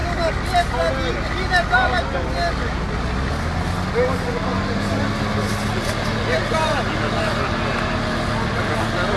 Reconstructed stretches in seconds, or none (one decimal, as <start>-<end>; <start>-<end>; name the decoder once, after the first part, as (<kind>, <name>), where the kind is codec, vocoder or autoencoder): none